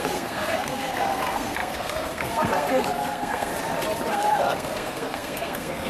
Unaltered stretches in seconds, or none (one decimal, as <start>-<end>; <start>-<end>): 3.5-4.1